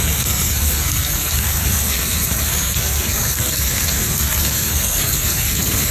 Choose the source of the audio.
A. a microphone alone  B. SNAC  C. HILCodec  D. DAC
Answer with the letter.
B